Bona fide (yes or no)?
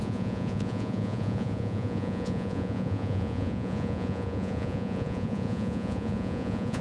no